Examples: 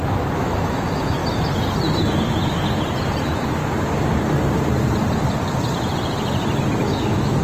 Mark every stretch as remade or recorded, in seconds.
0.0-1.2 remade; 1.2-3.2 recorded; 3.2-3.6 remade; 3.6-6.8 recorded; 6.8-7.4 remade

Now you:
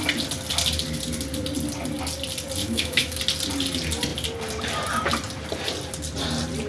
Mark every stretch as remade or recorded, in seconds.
0.0-2.6 recorded; 2.6-3.2 remade; 3.2-6.7 recorded

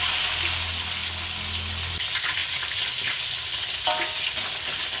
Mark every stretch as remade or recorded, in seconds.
0.0-5.0 recorded

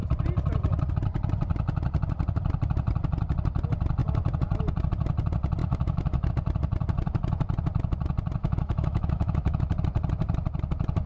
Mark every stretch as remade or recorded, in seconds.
0.0-5.6 recorded; 5.6-6.3 remade; 6.3-8.4 recorded; 8.4-9.7 remade; 9.7-11.1 recorded

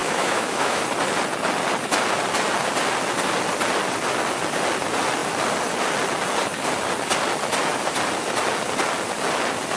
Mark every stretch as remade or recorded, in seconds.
0.0-0.8 remade; 0.8-9.8 recorded

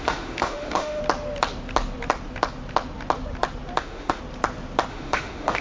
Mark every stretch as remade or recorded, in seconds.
0.0-1.0 remade; 1.0-3.8 recorded; 3.8-4.2 remade; 4.2-4.9 recorded; 4.9-5.6 remade